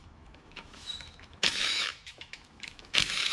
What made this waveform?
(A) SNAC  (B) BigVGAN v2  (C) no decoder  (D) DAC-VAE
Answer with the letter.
D